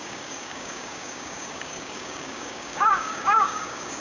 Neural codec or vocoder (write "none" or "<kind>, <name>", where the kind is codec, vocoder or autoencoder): codec, DAC